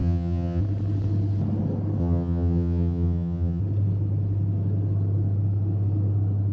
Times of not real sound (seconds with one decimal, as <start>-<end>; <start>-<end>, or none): 0.0-0.6; 2.0-3.6